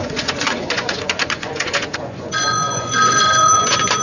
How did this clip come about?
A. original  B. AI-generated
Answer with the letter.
B